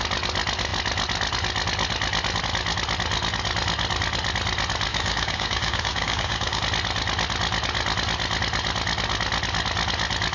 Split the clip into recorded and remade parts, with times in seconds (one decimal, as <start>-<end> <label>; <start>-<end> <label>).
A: 0.0-4.9 recorded; 4.9-6.6 remade; 6.6-10.3 recorded